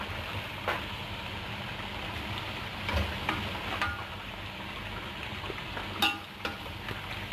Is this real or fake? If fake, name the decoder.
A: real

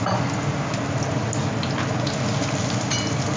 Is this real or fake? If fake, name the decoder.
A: real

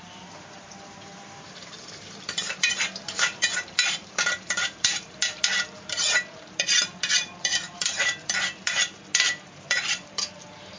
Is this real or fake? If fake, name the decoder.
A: fake, vocoder, BigVGAN v2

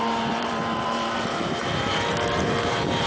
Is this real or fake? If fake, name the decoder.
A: fake, vocoder, BigVGAN v2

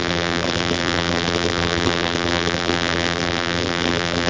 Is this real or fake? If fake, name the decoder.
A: fake, vocoder, BigVGAN v2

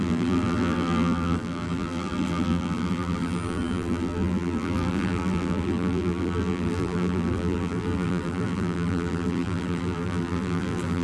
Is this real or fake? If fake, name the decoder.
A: fake, vocoder, BigVGAN v2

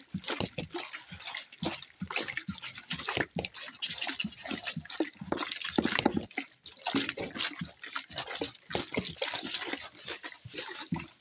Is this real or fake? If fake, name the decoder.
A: real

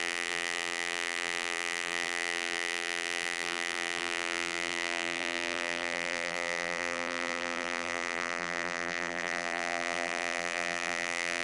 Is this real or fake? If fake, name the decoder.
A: fake, vocoder, BigVGAN v2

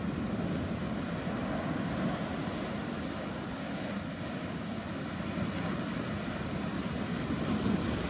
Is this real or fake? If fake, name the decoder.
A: real